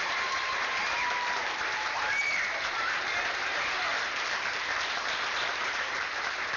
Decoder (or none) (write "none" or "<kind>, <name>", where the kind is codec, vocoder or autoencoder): vocoder, BigVGAN v2